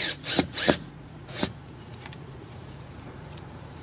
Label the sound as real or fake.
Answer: fake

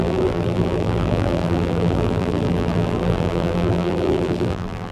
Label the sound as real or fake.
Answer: fake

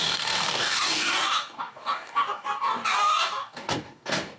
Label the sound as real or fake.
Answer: fake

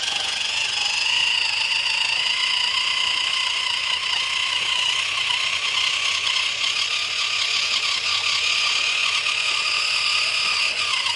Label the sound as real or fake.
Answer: fake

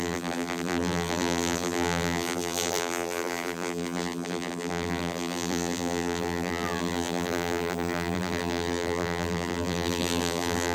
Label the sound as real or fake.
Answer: fake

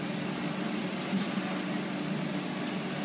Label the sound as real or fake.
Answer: real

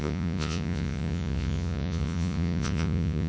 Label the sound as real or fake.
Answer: fake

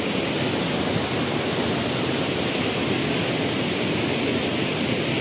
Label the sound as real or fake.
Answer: real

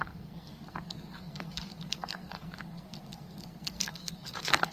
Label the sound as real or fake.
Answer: fake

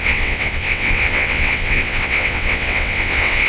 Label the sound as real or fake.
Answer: fake